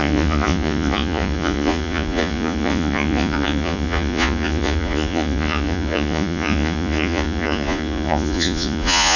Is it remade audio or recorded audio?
remade